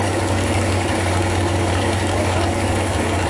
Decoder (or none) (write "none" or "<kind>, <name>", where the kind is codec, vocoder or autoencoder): codec, DAC